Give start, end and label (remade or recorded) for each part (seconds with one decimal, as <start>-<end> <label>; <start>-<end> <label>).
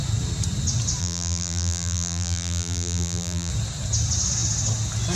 0.0-1.0 recorded; 1.0-3.5 remade; 3.5-5.2 recorded